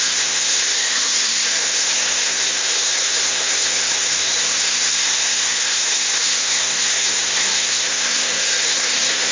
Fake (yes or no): yes